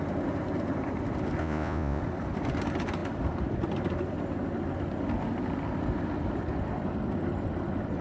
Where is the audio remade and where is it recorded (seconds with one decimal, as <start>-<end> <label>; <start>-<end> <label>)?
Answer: 0.0-1.4 recorded; 1.4-2.0 remade; 2.0-8.0 recorded